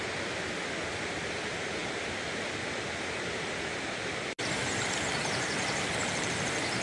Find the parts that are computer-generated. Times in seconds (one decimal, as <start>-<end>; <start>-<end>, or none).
none

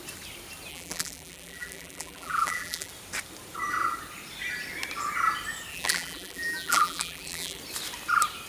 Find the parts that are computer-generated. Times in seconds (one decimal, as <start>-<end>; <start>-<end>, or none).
0.7-2.9; 5.7-7.6

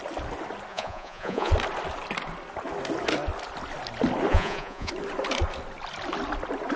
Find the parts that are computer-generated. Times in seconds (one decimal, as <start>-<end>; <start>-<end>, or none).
0.7-1.5; 4.3-4.9

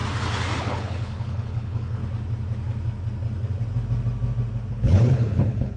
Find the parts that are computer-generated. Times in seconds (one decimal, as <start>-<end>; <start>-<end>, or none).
0.6-2.0; 4.7-5.8

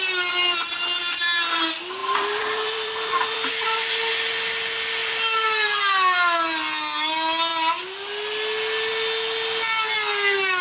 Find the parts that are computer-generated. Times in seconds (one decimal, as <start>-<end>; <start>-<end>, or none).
2.0-3.5; 5.0-5.8

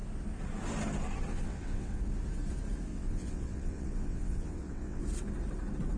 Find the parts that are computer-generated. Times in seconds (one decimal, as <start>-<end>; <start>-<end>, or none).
1.3-2.0; 2.9-5.0